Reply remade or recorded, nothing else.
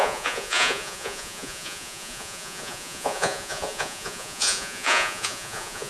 remade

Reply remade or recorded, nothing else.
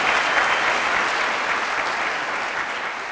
recorded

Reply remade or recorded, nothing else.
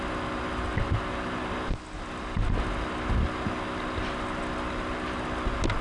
recorded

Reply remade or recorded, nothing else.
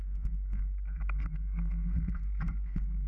remade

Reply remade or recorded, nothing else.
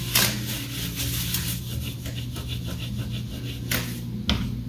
recorded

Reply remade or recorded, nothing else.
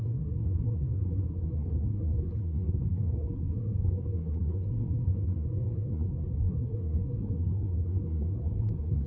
remade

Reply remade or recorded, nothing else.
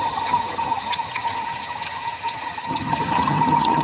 remade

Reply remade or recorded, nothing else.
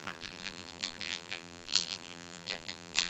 remade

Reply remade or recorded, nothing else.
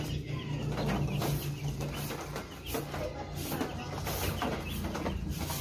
recorded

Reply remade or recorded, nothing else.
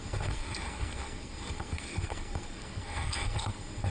remade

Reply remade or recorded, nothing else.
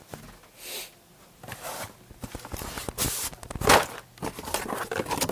recorded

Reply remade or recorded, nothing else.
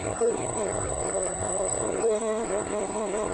remade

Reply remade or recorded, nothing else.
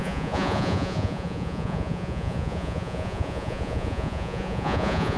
remade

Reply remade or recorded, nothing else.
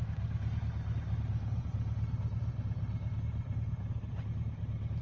recorded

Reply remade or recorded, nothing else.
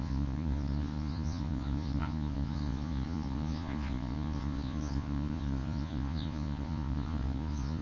remade